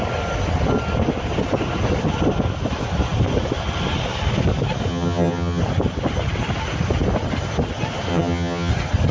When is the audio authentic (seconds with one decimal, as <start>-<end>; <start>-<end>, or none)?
0.0-4.9; 5.6-8.1; 8.7-9.1